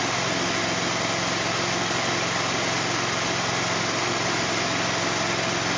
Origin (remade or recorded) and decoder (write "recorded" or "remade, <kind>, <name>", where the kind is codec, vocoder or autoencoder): recorded